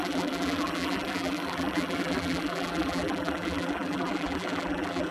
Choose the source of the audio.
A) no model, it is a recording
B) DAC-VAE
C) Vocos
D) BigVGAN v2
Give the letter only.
D